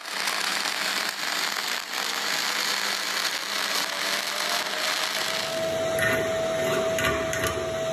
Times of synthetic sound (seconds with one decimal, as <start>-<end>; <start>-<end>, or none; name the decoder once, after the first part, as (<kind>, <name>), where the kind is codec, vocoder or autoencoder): 0.5-1.5 (vocoder, BigVGAN v2)